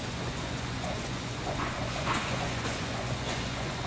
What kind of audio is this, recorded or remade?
remade